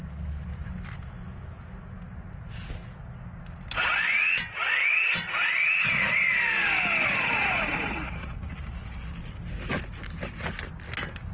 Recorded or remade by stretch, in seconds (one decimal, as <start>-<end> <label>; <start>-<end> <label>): 0.0-11.3 recorded

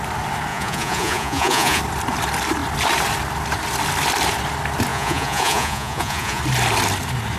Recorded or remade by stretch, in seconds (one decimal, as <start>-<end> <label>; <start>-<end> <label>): 0.0-0.5 recorded; 0.5-1.8 remade; 1.8-4.9 recorded; 4.9-6.4 remade; 6.4-7.4 recorded

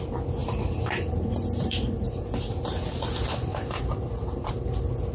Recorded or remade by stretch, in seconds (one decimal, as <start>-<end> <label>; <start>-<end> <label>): 0.0-0.4 recorded; 0.4-2.9 remade; 2.9-3.5 recorded; 3.5-4.5 remade; 4.5-5.1 recorded